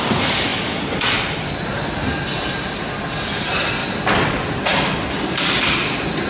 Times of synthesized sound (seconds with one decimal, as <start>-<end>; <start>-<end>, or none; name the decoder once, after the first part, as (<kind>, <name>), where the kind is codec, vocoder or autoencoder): 0.5-3.0 (vocoder, BigVGAN v2); 3.8-4.3; 4.7-6.3

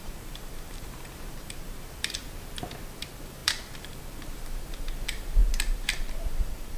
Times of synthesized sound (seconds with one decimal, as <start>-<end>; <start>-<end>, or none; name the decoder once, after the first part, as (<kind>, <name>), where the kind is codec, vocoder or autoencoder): 0.0-2.2 (vocoder, BigVGAN v2); 2.9-6.8

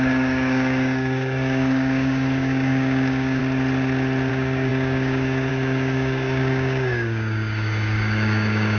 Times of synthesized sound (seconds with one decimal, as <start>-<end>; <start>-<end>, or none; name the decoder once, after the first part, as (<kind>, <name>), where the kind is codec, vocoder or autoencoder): 0.0-3.4 (codec, DAC); 4.3-8.8

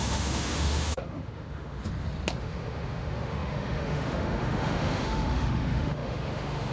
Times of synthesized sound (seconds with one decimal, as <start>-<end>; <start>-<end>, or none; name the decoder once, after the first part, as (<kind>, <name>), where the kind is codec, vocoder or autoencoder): 0.0-1.8 (autoencoder, DAC-VAE); 2.4-6.7

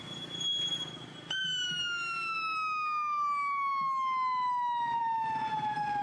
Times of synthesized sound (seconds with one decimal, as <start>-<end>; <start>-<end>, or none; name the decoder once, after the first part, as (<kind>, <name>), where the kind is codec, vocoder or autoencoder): 0.7-1.7 (vocoder, BigVGAN v2)